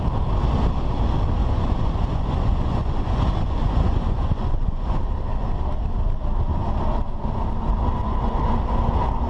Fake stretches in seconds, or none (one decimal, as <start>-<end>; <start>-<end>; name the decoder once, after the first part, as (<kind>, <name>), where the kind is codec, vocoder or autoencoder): 1.4-5.0 (vocoder, Vocos); 8.0-8.6